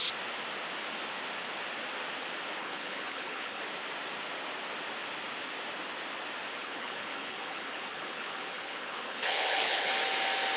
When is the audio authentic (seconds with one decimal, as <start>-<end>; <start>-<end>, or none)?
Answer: 0.0-2.6; 3.6-6.6; 9.9-10.6

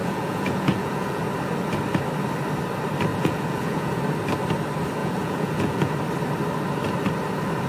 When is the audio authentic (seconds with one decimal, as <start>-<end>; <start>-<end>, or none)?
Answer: 1.2-3.1; 4.0-5.0; 5.9-7.7